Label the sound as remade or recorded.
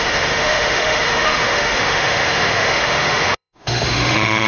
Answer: remade